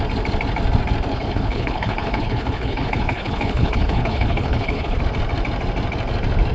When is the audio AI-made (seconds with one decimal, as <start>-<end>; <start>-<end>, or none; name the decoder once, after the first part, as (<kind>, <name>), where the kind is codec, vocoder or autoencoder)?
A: 1.1-5.0 (codec, HILCodec)